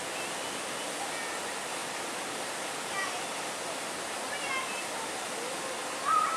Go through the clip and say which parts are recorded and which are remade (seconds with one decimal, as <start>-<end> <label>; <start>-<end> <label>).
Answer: 0.0-6.4 recorded